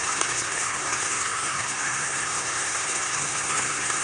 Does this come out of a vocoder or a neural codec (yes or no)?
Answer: yes